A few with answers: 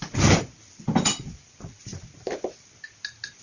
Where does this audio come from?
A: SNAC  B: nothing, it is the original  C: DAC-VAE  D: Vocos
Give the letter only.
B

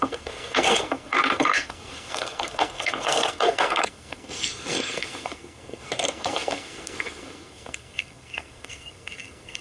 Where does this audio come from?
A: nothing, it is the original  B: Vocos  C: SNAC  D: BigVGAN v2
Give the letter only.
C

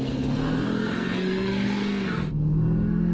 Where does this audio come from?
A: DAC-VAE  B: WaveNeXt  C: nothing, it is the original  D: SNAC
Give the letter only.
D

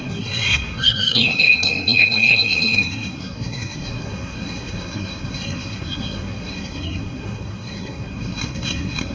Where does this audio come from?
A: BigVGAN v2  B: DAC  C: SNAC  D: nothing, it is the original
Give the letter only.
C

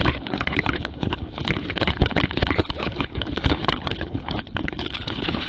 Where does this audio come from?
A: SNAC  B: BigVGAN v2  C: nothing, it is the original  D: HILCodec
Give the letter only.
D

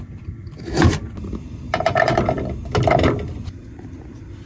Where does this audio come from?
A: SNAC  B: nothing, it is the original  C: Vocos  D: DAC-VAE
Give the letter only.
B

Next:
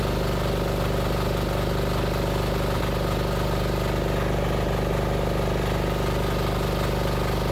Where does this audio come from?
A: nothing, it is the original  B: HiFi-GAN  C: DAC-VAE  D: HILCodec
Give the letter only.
A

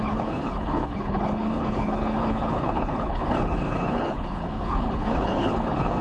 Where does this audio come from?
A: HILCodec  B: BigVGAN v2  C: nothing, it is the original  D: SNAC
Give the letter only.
A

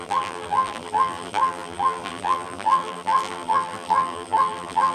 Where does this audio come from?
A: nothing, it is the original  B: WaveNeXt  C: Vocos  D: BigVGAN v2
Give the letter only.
D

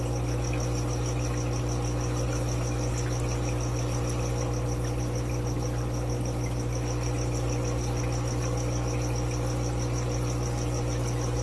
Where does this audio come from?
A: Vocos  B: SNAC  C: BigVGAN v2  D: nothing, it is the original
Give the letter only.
D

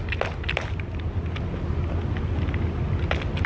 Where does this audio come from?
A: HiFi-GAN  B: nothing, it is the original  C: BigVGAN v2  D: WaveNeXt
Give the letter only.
B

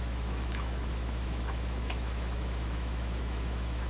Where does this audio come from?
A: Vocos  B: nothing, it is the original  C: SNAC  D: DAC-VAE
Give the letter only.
D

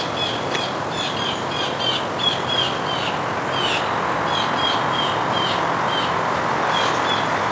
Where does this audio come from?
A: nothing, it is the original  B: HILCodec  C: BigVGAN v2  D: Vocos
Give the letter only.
A